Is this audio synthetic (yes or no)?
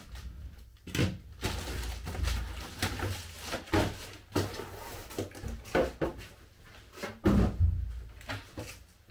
no